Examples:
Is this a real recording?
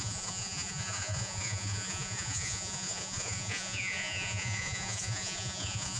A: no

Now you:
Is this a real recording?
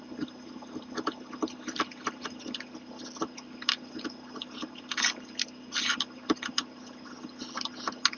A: yes